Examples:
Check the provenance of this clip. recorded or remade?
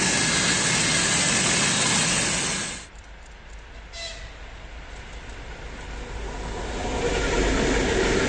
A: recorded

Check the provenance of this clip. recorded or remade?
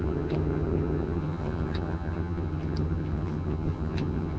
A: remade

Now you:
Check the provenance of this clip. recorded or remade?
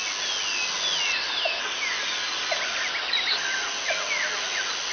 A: recorded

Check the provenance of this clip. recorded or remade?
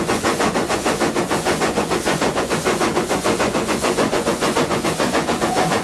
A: remade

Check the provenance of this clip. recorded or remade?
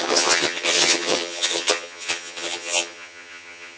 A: remade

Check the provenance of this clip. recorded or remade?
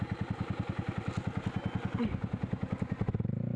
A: recorded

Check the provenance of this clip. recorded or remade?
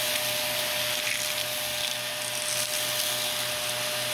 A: recorded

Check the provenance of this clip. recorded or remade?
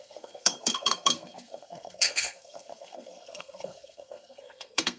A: remade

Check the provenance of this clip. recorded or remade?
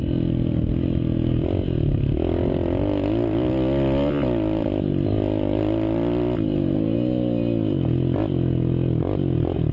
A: recorded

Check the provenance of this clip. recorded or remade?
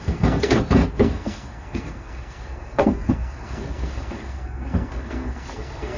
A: remade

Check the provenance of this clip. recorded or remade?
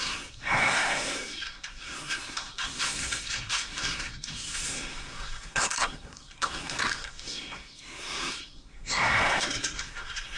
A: remade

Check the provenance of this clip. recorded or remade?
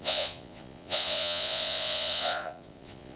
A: remade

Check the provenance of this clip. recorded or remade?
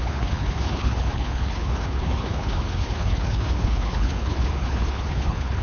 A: remade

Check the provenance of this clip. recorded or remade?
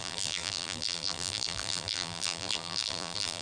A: remade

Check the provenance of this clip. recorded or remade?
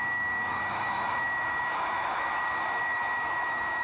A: remade